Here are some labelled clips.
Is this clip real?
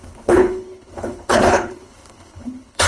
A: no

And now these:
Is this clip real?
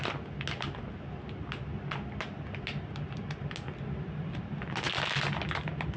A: yes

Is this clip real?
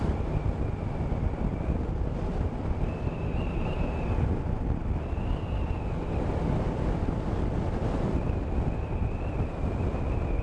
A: yes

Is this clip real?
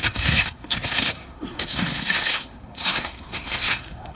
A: no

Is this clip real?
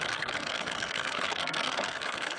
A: no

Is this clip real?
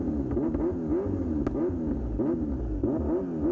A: yes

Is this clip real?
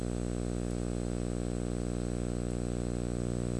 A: yes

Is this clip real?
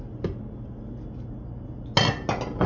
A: yes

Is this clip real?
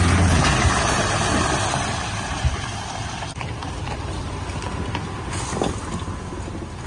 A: yes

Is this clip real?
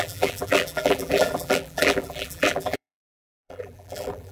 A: no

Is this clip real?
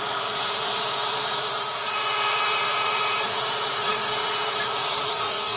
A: no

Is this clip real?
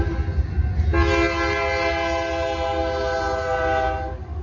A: yes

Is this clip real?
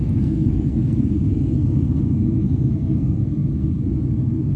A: no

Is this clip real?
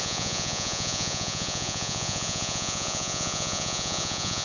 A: no